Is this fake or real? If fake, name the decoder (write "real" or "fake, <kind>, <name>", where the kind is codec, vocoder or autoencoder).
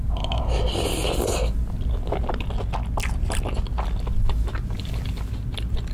real